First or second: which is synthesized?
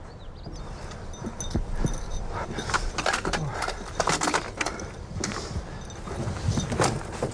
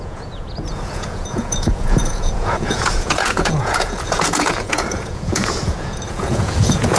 second